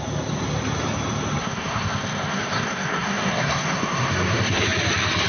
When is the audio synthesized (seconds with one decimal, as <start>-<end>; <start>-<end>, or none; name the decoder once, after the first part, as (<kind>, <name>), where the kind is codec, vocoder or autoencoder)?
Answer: 1.4-4.6 (codec, SNAC)